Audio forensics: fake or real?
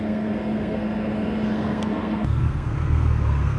fake